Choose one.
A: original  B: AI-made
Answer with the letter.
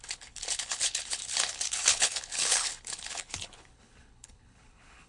B